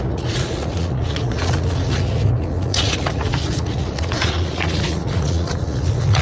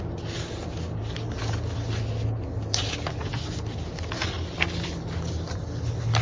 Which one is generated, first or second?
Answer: first